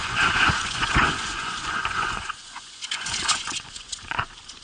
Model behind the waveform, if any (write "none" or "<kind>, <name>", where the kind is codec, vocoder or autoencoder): vocoder, Vocos